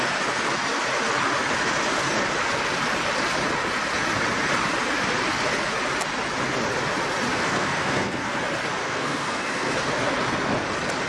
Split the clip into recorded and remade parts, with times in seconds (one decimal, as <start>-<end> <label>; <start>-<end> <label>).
0.0-7.3 recorded; 7.3-8.4 remade; 8.4-8.8 recorded; 8.8-9.9 remade; 9.9-11.1 recorded